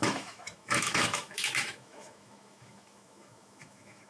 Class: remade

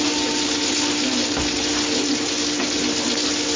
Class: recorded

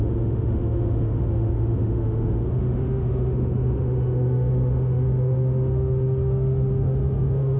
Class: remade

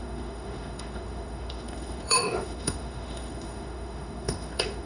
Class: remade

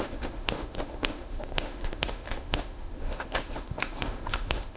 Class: remade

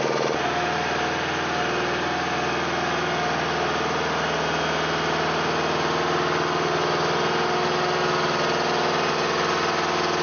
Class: recorded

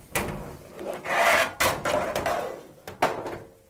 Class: recorded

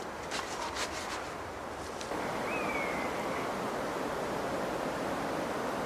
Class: recorded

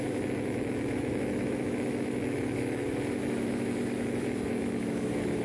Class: remade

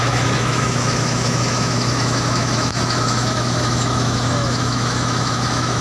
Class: remade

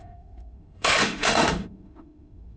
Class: remade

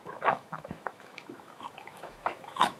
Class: remade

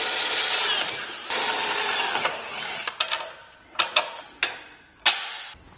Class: recorded